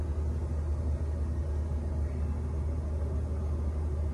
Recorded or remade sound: recorded